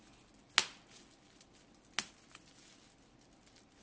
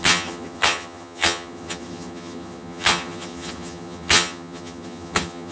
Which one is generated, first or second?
second